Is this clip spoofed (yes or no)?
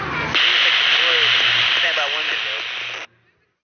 no